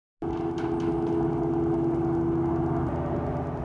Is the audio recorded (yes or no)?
yes